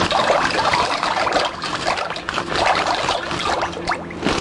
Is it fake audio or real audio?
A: real